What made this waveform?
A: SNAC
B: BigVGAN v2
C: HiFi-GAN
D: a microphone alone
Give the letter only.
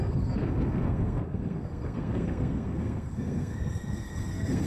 A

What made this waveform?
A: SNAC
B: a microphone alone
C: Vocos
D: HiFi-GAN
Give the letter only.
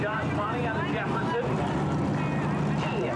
B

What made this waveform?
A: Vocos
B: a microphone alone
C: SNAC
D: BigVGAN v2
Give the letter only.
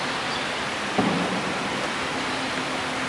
B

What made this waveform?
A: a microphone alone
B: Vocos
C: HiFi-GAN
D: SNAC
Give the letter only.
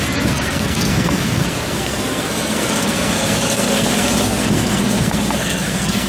D